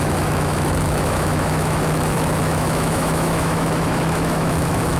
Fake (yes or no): yes